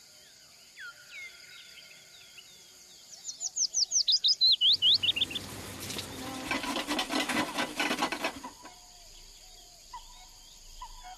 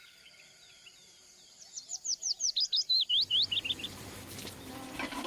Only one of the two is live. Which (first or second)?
first